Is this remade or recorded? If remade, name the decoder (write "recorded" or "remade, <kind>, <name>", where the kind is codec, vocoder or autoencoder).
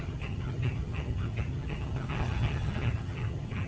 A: remade, vocoder, HiFi-GAN